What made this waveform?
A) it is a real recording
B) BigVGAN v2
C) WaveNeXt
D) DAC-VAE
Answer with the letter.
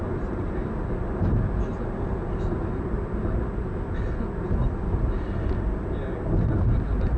A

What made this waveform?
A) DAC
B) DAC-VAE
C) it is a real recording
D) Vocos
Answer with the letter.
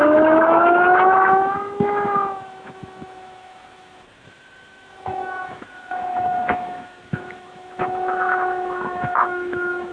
B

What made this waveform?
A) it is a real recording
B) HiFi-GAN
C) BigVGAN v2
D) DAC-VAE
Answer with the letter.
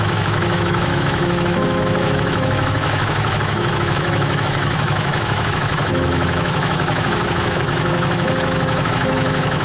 D